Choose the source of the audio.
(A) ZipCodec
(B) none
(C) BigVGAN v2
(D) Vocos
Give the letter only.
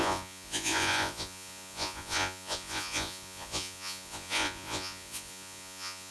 D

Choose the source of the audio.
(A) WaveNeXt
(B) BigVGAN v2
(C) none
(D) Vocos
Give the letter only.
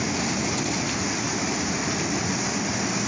C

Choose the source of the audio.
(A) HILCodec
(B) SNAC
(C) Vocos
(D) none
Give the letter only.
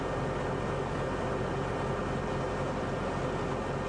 D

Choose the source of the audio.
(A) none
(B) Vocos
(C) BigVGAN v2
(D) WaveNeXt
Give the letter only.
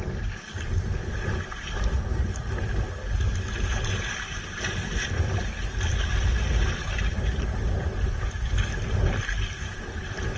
A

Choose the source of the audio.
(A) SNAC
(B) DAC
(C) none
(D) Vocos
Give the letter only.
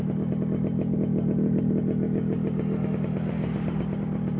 C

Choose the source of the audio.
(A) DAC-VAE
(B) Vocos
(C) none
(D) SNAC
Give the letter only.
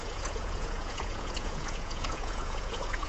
B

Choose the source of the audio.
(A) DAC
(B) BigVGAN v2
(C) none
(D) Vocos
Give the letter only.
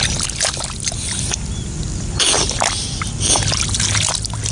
C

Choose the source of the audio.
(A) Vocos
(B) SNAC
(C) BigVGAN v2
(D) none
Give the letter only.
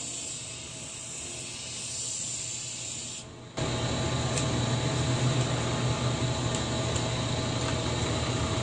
D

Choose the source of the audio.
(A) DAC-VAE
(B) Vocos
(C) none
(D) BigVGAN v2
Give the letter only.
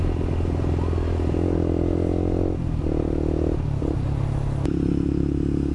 C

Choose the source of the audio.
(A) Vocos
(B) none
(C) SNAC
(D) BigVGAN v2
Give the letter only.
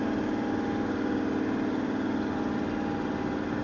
B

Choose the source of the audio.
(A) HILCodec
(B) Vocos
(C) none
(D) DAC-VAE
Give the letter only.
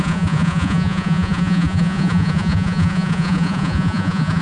B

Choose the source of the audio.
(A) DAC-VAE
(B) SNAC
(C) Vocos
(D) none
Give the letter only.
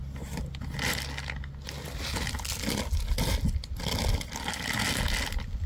D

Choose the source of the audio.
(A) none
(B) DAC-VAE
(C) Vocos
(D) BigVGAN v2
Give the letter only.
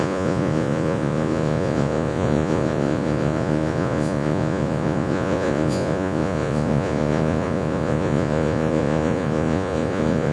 C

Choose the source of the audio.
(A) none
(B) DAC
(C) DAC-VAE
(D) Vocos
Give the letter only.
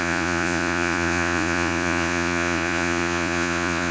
D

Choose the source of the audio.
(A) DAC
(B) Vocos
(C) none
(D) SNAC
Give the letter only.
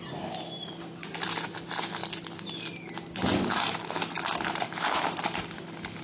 C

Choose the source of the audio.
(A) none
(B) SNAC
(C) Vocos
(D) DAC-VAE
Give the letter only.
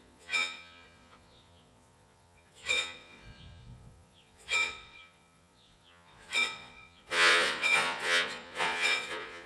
C